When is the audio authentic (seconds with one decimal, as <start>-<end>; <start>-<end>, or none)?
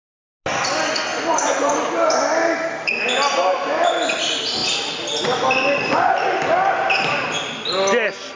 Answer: 0.0-1.1; 3.1-8.4